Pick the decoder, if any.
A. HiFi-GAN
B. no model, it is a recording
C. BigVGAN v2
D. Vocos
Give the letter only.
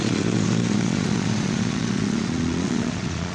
D